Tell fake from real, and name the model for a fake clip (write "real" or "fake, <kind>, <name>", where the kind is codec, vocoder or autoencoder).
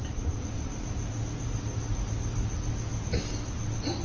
real